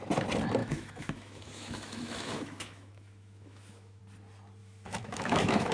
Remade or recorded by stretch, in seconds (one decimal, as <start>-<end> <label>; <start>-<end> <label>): 0.0-0.6 recorded; 0.6-4.0 remade; 4.0-4.6 recorded; 4.6-5.7 remade